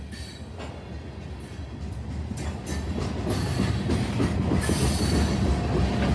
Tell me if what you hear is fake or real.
real